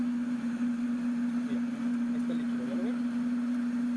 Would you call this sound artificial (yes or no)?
no